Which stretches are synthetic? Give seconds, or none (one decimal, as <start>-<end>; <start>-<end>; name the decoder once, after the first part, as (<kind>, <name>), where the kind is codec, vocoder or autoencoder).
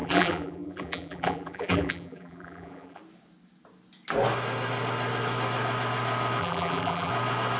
0.0-3.0 (vocoder, BigVGAN v2); 6.4-7.1